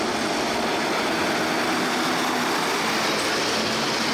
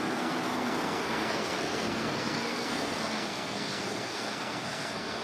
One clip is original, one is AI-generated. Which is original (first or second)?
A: first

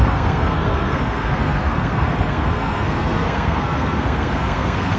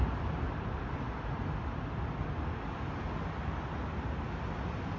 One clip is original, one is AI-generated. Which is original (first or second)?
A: second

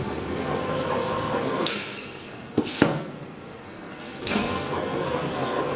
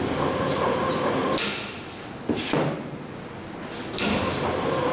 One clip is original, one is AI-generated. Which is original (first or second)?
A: second